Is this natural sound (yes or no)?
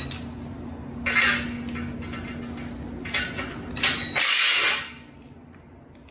yes